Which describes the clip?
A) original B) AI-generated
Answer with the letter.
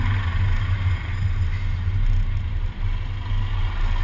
A